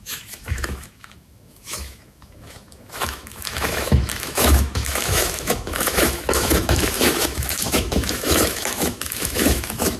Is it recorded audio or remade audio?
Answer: remade